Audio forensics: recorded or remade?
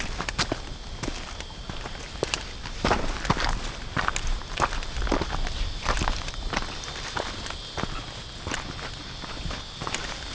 recorded